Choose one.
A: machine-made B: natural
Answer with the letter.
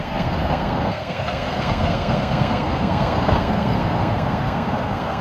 A